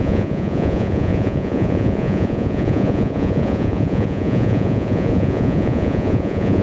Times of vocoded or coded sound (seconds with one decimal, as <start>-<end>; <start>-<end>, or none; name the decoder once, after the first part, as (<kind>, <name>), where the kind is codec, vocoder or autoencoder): 0.0-6.6 (vocoder, Vocos)